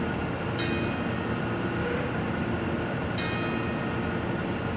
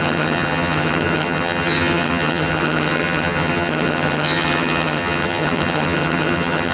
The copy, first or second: second